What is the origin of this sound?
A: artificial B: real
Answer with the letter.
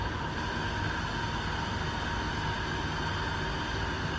B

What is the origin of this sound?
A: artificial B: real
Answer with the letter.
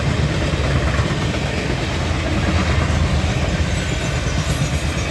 B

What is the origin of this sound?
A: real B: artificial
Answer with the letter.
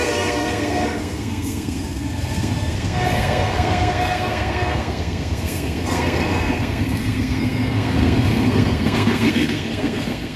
B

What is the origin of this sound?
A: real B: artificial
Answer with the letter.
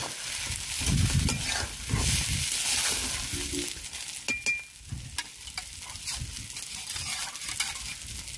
A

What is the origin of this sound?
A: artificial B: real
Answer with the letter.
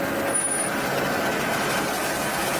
B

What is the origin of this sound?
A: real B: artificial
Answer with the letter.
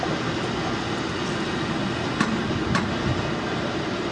A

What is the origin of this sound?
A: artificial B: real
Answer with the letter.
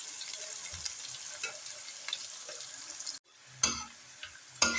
B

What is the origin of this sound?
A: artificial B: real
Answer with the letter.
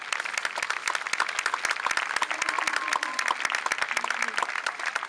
B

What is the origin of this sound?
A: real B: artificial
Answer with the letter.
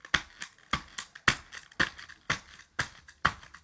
A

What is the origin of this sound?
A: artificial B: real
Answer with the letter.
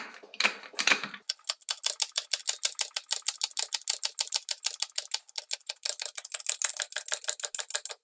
B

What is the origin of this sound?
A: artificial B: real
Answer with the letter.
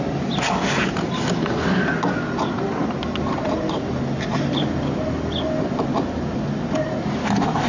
B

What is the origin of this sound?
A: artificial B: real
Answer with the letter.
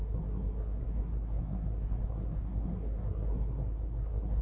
A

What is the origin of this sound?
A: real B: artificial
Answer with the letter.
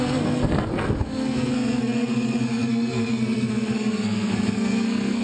B